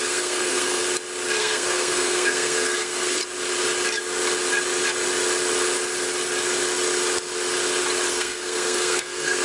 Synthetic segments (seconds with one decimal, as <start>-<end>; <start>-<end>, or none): 0.0-0.8; 1.4-3.2; 8.1-9.4